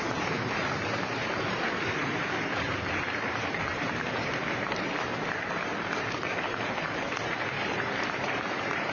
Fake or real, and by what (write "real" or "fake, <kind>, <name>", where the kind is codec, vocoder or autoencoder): fake, vocoder, BigVGAN v2